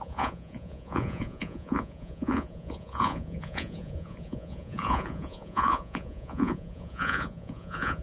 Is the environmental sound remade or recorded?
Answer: remade